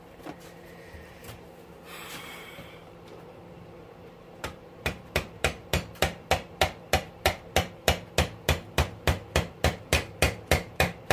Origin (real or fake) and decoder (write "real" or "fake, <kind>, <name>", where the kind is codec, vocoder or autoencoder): fake, vocoder, BigVGAN v2